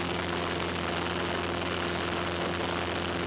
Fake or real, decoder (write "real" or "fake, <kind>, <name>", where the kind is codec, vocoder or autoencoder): real